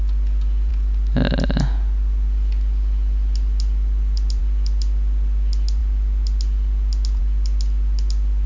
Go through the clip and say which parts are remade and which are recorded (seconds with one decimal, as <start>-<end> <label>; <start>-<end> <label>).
0.0-8.5 recorded